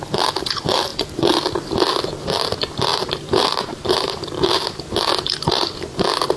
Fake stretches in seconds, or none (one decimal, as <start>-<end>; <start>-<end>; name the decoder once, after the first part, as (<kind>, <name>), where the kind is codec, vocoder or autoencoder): 2.9-4.8 (vocoder, BigVGAN v2)